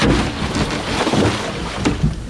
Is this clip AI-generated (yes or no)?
no